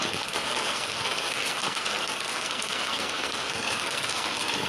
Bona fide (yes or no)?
no